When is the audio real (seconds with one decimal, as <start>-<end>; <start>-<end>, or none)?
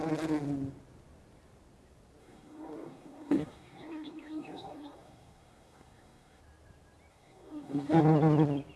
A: 0.0-2.2; 6.4-7.1; 8.0-8.8